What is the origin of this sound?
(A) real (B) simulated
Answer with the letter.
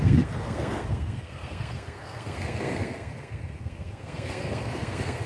B